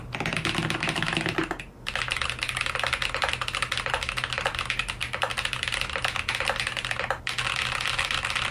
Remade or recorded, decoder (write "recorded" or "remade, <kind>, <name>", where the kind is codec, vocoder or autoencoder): recorded